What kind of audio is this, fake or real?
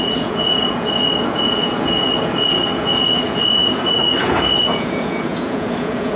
fake